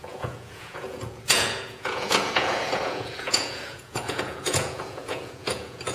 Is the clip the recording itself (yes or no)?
no